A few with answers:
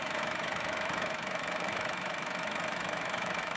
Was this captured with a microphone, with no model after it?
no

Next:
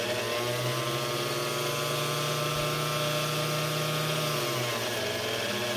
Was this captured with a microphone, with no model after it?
yes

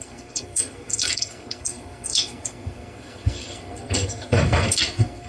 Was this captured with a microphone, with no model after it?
no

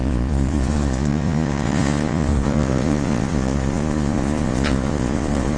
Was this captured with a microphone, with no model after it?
no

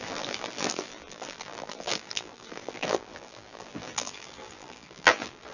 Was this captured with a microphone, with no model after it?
no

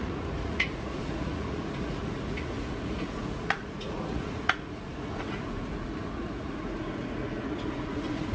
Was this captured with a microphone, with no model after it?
no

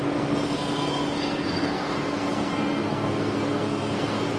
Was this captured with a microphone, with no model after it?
no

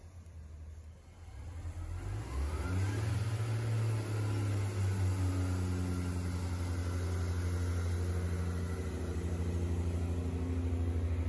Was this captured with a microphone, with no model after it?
yes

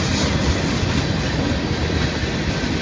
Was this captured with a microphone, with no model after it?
yes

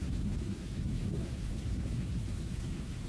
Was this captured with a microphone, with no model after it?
no